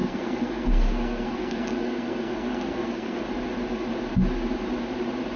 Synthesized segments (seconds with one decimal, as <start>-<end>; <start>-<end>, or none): 0.0-3.2